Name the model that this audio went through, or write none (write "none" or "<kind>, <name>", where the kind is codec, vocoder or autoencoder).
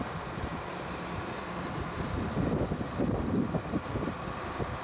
none